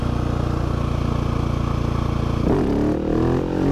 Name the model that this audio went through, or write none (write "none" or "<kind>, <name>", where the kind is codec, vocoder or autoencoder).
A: none